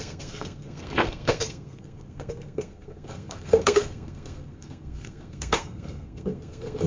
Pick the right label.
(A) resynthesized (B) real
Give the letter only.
A